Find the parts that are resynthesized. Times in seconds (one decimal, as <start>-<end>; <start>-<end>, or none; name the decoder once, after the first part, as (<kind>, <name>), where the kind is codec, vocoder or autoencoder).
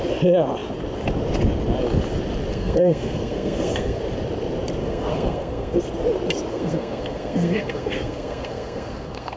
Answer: 2.5-4.0 (codec, SNAC); 4.8-5.8; 6.5-9.4